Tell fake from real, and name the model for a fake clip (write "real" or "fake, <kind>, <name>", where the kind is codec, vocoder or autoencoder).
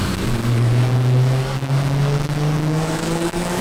fake, codec, DAC